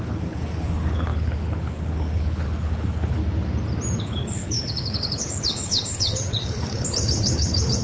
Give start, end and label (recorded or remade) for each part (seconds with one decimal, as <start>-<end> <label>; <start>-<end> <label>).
0.0-3.2 remade; 3.2-4.0 recorded; 4.0-7.8 remade